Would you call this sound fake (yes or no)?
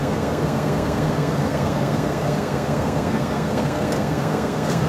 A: yes